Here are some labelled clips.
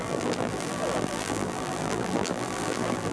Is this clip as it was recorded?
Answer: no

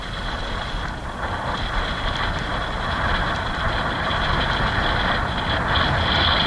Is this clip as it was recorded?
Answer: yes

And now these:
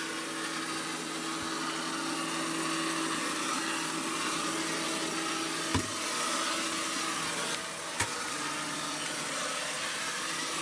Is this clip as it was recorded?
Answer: yes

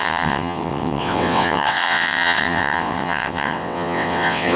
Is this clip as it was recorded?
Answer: no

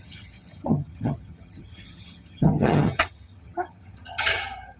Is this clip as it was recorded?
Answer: no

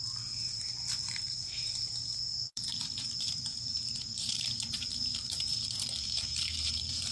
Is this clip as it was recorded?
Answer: no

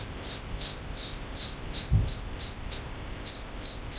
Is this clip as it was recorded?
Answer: no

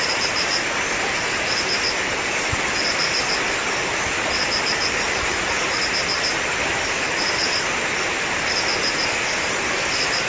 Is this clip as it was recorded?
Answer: yes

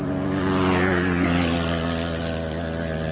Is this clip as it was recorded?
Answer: yes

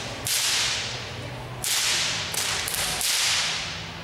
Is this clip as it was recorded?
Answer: yes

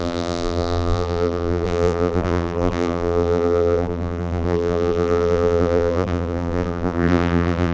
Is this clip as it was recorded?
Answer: no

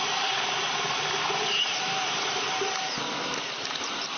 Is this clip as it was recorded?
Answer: yes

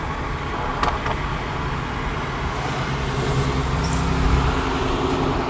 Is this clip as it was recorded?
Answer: yes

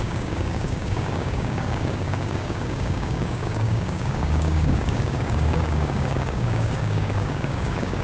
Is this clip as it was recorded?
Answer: no